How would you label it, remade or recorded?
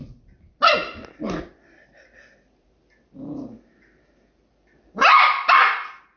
recorded